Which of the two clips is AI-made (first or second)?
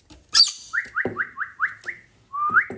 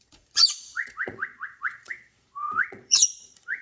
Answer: second